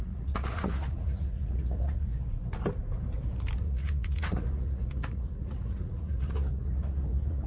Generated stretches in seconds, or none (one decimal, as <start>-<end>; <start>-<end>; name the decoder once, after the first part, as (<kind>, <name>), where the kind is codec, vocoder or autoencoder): 0.0-2.1 (vocoder, Vocos); 3.6-7.5